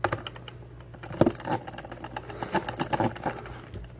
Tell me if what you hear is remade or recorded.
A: recorded